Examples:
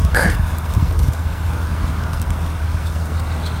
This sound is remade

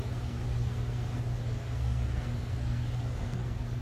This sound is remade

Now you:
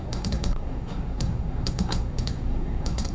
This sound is remade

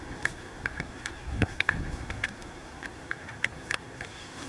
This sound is remade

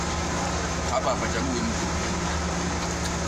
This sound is recorded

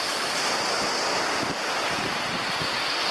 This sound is recorded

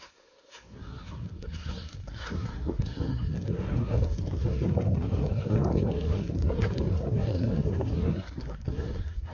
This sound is remade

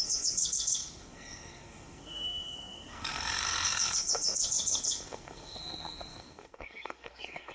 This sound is remade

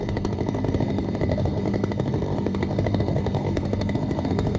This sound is remade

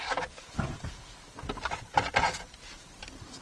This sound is recorded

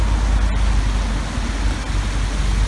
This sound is recorded